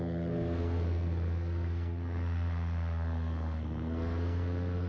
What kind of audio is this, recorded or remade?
remade